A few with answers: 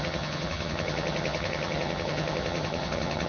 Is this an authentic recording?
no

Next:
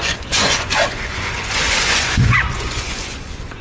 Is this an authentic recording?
no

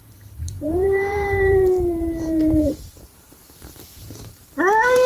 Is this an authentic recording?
no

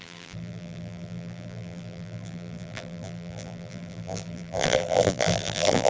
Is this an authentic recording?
no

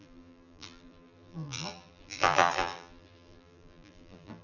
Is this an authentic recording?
no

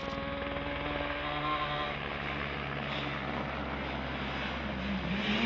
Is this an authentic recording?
yes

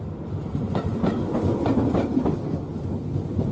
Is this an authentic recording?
yes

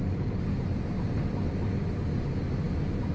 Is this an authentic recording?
yes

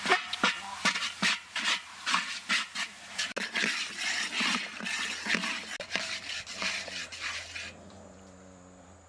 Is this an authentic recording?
yes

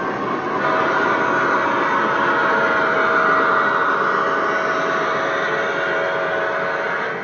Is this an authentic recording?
yes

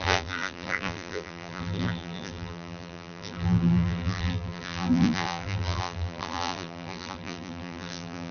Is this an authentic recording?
no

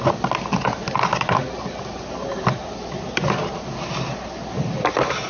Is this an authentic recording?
yes